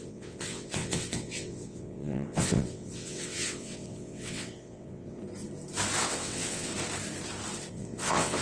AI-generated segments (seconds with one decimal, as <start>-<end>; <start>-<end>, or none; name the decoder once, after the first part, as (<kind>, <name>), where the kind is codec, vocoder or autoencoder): 0.0-5.2 (vocoder, WaveNeXt); 6.0-6.7; 7.7-8.4